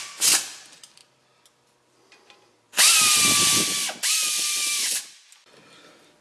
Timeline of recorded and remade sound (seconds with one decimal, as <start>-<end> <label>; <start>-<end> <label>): 0.0-6.2 recorded